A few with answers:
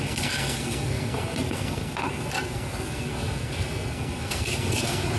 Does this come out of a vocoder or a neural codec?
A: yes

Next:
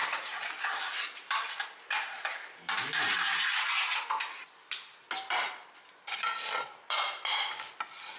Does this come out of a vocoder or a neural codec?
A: no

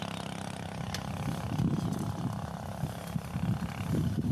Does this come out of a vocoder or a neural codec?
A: no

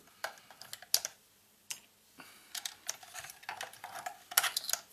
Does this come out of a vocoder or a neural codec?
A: no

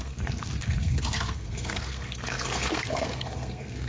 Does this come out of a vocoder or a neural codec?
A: yes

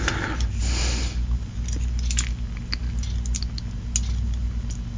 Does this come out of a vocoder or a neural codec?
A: no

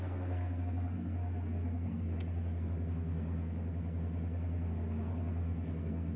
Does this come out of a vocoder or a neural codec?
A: yes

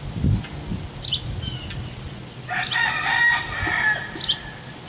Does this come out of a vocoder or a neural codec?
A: no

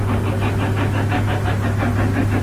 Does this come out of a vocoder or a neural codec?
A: no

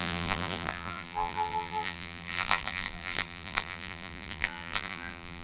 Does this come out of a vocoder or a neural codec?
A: yes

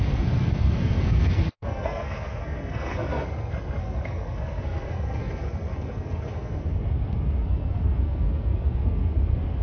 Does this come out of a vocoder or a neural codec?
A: yes